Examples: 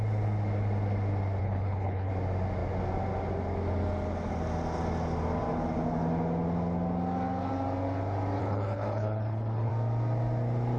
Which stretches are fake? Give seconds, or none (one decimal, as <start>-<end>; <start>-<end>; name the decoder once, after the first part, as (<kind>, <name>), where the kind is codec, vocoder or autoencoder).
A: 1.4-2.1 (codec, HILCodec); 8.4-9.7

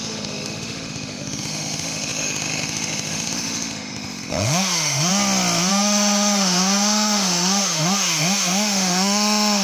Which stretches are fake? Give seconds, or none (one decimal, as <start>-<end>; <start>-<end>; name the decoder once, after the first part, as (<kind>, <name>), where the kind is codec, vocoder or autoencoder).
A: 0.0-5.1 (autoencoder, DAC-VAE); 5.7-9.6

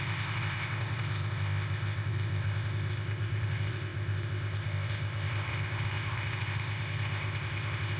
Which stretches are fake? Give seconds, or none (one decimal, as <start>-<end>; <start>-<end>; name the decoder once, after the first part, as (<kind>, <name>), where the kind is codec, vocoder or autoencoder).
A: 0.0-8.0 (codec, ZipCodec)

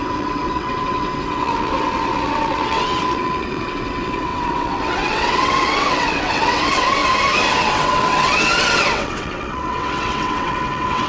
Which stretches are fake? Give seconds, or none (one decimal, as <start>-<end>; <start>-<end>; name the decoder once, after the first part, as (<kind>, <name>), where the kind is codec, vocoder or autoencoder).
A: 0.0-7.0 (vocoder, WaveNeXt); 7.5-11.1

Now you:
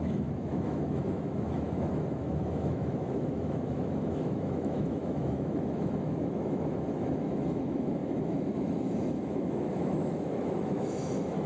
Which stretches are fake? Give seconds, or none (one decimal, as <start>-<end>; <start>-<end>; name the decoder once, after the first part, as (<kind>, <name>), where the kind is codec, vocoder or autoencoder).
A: 0.0-11.5 (autoencoder, DAC-VAE)

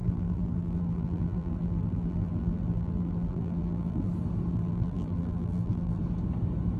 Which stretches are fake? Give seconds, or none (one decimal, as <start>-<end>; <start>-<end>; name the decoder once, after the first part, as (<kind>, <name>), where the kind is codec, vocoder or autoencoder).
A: 0.0-4.1 (vocoder, BigVGAN v2); 4.5-6.0